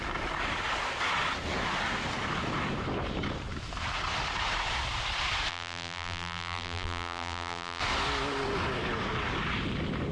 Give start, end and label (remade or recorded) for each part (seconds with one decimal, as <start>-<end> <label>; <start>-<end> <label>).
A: 0.0-5.5 recorded; 5.5-7.8 remade; 7.8-10.1 recorded